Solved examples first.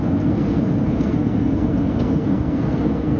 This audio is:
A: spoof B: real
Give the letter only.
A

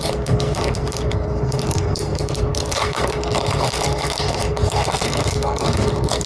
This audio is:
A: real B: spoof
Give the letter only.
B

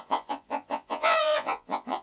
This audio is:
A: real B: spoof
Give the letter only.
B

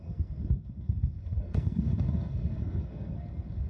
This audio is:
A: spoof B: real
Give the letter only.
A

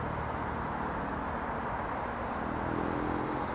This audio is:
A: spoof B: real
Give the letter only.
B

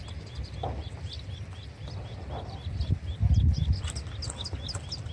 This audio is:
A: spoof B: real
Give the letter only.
B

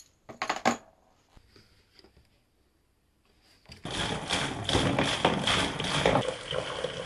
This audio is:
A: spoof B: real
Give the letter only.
B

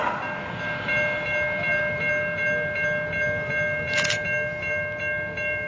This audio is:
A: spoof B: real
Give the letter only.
B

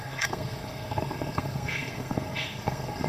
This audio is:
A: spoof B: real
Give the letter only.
A